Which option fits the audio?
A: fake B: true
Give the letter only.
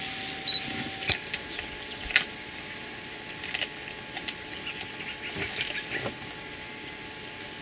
B